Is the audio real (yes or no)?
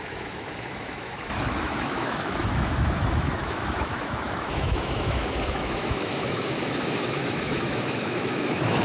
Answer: no